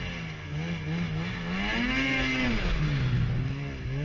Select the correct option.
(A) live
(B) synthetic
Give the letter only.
A